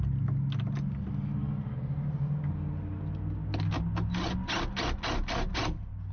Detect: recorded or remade recorded